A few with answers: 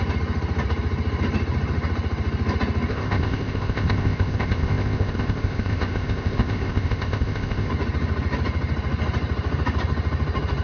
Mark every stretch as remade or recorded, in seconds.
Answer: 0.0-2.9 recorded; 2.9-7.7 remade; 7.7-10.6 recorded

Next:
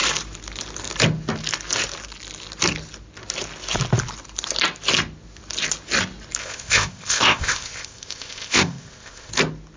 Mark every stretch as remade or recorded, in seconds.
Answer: 0.0-6.4 recorded; 6.4-9.3 remade; 9.3-9.8 recorded

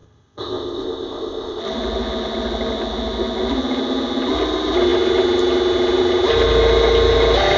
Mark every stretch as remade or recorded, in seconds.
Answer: 0.0-1.6 remade; 1.6-7.6 recorded